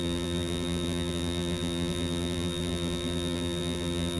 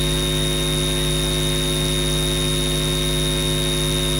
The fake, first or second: first